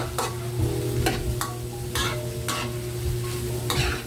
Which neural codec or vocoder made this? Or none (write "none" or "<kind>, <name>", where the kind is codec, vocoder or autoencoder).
none